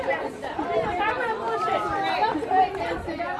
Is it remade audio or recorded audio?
recorded